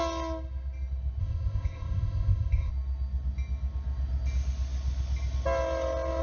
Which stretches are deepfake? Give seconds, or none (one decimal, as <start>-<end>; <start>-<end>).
1.2-2.7